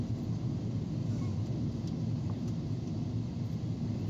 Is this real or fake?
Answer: real